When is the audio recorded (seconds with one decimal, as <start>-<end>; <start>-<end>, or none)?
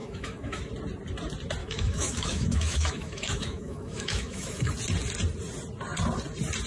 0.7-1.6; 4.7-6.7